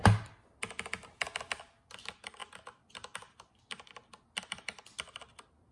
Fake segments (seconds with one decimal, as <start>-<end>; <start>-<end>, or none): none